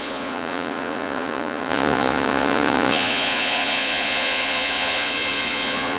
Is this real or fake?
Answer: fake